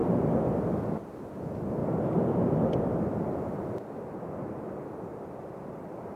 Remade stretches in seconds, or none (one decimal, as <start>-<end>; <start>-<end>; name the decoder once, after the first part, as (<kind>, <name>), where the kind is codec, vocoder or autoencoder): none